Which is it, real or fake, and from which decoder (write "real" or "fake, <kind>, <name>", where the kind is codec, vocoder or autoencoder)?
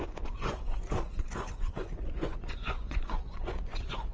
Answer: fake, vocoder, Vocos